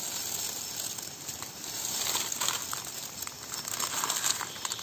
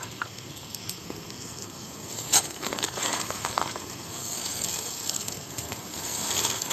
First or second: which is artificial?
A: second